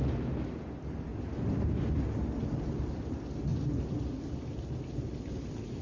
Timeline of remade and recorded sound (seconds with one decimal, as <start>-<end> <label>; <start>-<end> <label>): 0.0-5.8 recorded